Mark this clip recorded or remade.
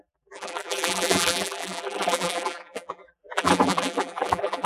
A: remade